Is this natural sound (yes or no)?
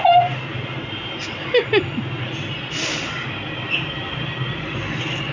yes